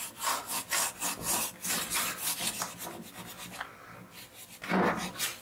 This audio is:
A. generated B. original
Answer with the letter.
B